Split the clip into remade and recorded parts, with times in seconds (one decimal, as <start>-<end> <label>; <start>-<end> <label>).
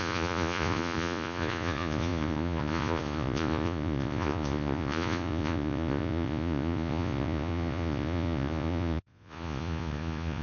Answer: 0.0-10.4 remade